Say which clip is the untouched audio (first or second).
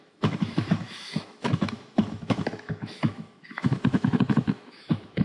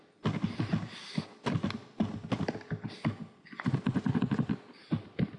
second